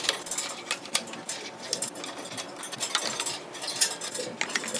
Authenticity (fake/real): real